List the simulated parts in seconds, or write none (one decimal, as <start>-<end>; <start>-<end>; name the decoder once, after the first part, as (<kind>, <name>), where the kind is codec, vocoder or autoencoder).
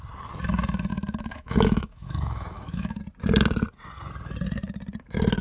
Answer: 0.9-3.0 (autoencoder, DAC-VAE)